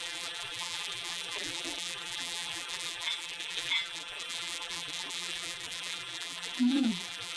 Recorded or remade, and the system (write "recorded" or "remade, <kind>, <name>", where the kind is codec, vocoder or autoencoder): remade, vocoder, BigVGAN v2